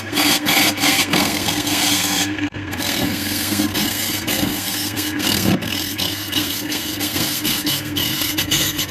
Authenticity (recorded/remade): remade